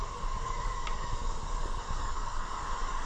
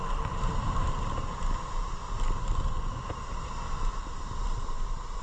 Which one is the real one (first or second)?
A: second